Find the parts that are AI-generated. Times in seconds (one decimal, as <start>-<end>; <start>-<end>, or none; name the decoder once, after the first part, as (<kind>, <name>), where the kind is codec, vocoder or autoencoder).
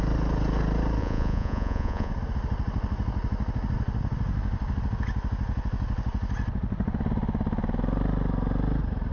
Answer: 1.0-2.1 (vocoder, Vocos)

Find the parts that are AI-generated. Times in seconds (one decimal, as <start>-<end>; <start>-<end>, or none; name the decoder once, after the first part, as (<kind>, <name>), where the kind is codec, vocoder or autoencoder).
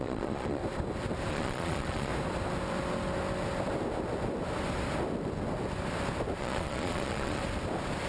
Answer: 0.0-0.6 (vocoder, Vocos); 1.3-2.1; 6.4-7.4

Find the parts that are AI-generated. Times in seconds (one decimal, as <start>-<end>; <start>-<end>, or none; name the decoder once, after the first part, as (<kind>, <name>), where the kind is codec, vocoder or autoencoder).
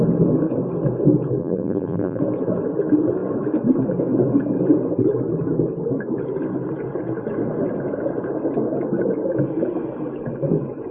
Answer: 1.4-2.2 (vocoder, BigVGAN v2)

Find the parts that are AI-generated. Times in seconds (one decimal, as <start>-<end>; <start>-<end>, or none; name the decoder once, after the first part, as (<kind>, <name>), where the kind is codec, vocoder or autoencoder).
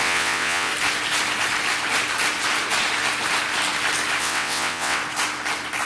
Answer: 0.0-0.7 (vocoder, WaveNeXt); 4.2-5.0